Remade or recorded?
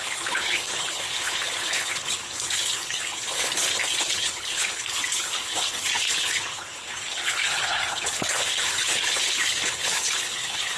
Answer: remade